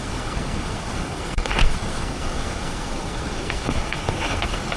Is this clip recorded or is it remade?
remade